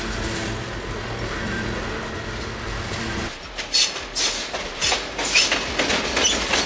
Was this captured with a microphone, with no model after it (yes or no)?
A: yes